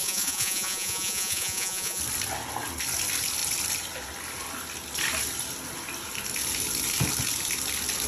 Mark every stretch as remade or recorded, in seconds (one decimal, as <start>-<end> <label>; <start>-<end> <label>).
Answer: 0.0-2.0 remade; 2.0-8.1 recorded